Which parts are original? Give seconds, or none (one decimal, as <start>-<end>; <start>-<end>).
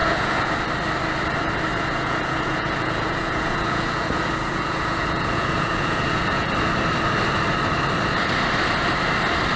0.5-1.7; 6.5-9.6